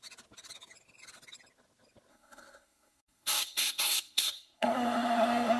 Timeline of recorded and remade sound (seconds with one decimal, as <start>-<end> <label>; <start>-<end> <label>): 0.0-2.1 recorded; 2.1-5.6 remade